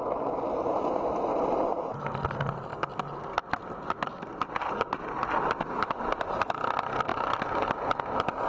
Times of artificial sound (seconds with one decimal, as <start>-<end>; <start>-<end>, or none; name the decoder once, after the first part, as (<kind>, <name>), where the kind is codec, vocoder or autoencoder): none